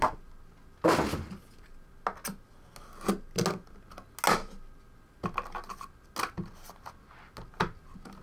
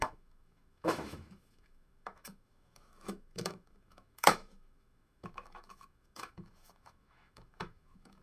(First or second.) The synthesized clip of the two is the second